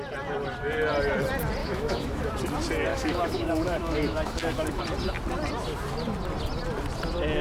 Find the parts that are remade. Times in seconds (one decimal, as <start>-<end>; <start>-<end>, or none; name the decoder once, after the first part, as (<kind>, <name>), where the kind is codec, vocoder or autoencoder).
1.6-2.3 (autoencoder, DAC-VAE); 2.9-4.8